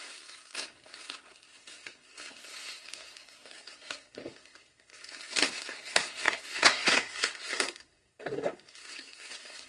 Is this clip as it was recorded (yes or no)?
no